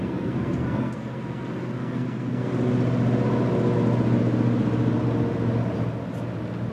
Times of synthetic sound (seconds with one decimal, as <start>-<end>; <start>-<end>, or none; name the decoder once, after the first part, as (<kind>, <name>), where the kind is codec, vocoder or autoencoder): 0.0-2.5 (codec, SNAC)